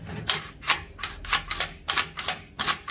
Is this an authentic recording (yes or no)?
yes